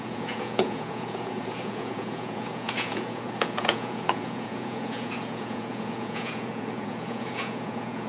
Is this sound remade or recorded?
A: remade